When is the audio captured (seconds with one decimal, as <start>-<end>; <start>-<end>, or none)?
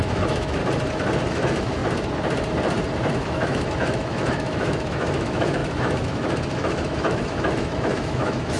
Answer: 0.6-1.3; 1.8-3.1